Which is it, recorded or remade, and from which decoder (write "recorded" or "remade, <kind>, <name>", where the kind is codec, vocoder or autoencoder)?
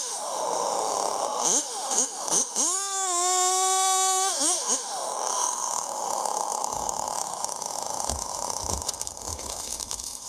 remade, autoencoder, DAC-VAE